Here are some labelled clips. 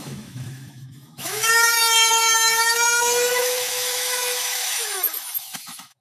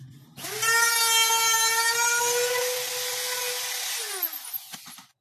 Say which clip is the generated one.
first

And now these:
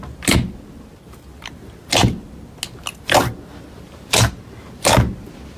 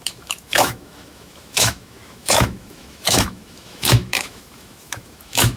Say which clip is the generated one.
second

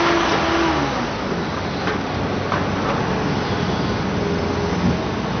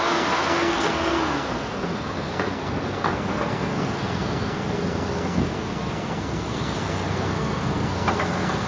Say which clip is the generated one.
second